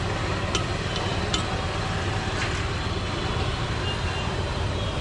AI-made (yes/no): no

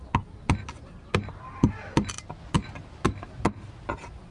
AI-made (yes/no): no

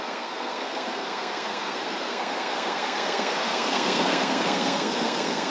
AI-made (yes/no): yes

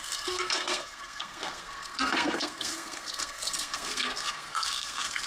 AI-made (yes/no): yes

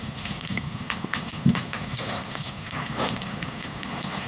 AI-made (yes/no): yes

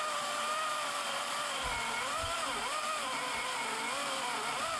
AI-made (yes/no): no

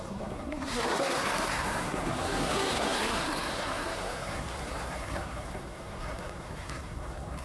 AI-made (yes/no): yes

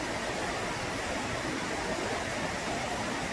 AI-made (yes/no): no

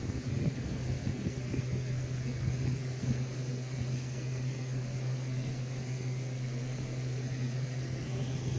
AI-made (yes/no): yes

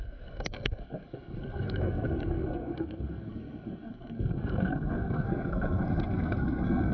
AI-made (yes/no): yes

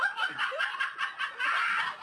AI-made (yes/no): no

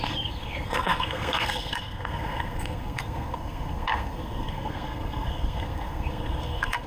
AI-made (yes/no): yes